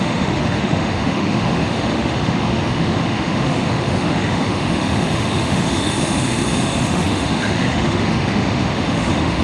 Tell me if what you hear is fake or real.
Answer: fake